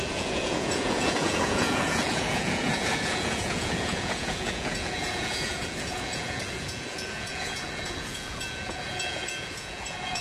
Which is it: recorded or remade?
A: remade